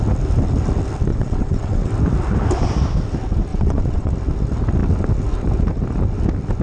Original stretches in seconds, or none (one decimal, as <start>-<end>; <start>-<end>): 0.0-1.1; 1.9-3.5; 4.1-6.6